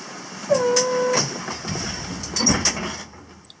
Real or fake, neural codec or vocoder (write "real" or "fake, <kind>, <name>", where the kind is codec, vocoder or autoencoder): real